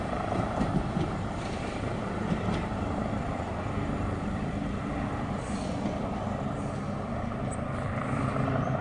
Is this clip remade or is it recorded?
remade